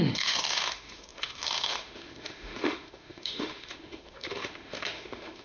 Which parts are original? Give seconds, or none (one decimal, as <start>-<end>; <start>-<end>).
none